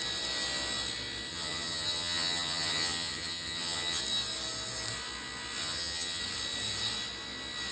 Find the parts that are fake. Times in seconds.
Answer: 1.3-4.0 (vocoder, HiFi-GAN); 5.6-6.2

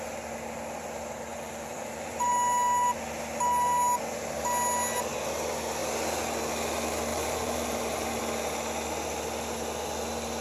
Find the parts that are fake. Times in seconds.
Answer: 1.3-2.3 (vocoder, BigVGAN v2); 7.1-8.2

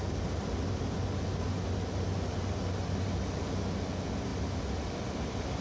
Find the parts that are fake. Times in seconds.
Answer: none

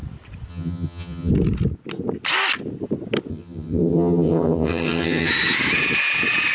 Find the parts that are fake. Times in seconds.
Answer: 0.5-1.3 (vocoder, HiFi-GAN); 3.3-5.3

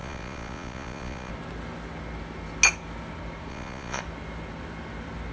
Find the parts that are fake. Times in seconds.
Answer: 0.0-1.3 (vocoder, Vocos); 3.5-4.0

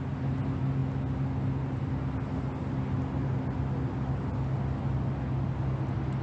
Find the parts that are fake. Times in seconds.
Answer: none

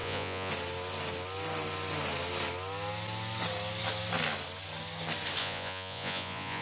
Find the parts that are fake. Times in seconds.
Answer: 0.0-0.5 (vocoder, Vocos); 5.4-6.6

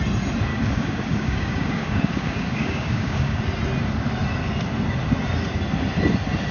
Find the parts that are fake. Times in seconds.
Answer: 0.5-3.4 (codec, DAC)